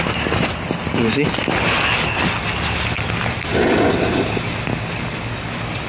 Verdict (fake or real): real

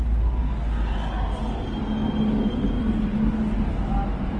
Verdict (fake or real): real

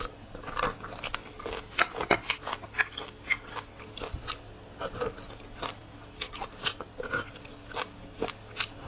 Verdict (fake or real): real